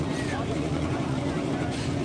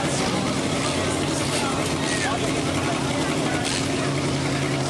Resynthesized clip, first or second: first